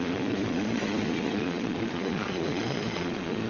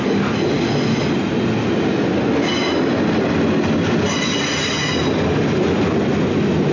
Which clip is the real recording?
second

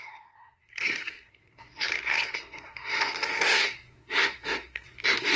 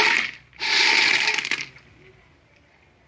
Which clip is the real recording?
second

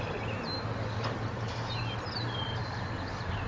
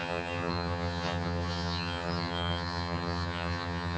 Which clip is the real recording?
first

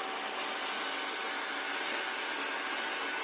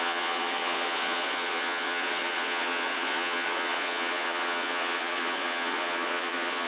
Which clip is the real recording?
first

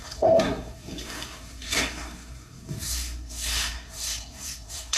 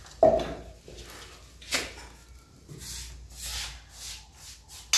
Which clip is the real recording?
second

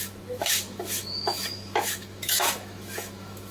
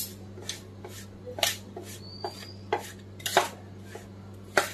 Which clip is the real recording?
second